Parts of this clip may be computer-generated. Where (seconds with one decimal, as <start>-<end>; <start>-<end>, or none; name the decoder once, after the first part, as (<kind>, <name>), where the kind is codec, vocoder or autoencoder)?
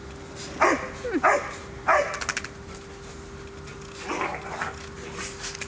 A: none